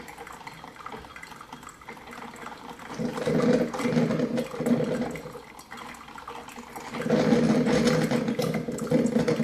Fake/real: real